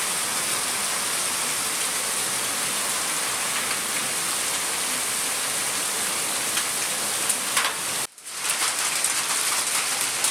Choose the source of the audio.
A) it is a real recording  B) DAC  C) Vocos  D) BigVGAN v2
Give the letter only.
A